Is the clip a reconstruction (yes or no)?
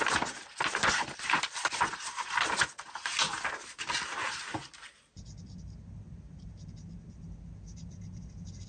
no